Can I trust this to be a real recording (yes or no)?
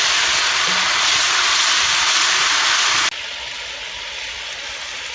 yes